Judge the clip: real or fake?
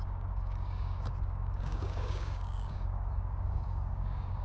fake